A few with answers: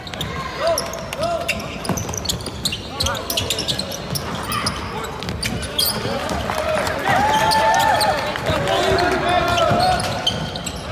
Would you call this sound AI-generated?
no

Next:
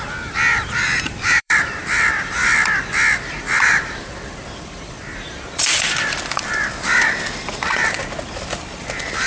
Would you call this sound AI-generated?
yes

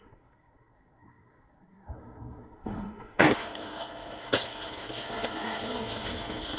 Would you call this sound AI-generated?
yes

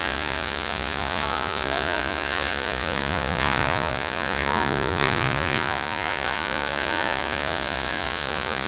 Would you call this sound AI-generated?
yes